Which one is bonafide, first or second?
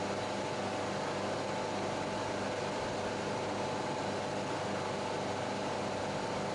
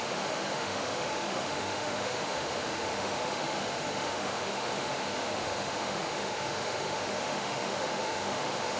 first